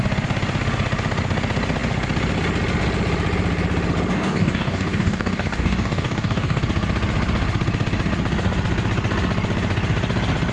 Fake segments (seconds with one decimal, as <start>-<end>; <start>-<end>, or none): 4.1-6.6